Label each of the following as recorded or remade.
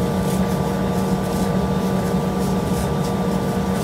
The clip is recorded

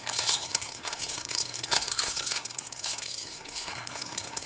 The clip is remade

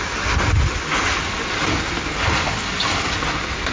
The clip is recorded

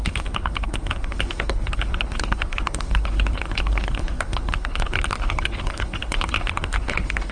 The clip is remade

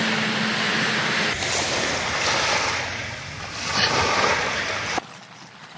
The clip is recorded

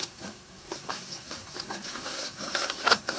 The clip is remade